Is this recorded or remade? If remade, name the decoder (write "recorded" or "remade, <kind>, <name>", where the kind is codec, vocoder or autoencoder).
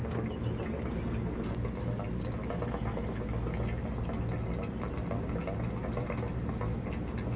recorded